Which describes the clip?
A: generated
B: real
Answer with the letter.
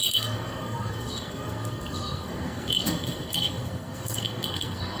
A